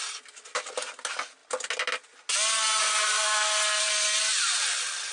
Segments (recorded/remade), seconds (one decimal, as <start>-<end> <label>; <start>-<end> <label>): 0.0-5.1 recorded

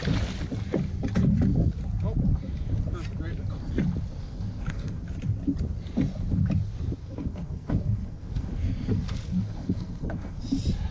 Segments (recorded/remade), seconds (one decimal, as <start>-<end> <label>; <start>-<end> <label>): 0.0-4.2 recorded; 4.2-5.0 remade; 5.0-7.0 recorded; 7.0-10.4 remade; 10.4-10.9 recorded

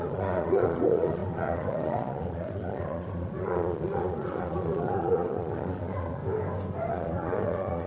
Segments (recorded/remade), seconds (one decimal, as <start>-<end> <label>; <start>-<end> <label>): 0.0-6.2 remade; 6.2-6.9 recorded; 6.9-7.9 remade

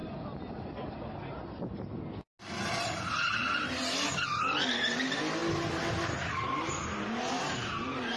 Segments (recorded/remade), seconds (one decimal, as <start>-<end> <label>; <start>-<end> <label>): 0.0-8.2 recorded

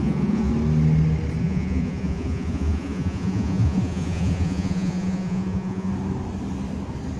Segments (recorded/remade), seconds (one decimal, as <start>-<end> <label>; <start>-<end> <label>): 0.0-0.5 remade; 0.5-1.4 recorded; 1.4-5.9 remade; 5.9-7.2 recorded

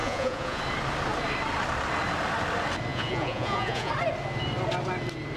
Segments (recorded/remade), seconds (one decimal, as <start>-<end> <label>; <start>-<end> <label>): 0.0-0.6 remade; 0.6-2.9 recorded; 2.9-3.9 remade; 3.9-5.4 recorded

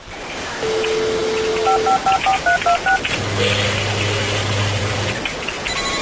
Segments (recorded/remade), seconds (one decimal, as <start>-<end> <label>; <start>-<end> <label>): 0.0-6.0 recorded